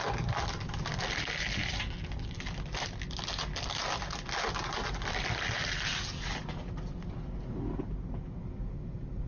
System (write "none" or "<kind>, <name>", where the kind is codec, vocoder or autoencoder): none